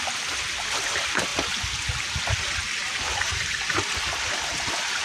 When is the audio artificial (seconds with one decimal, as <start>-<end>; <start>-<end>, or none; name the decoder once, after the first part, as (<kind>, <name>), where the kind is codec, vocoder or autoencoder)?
none